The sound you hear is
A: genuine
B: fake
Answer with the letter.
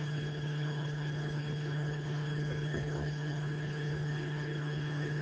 B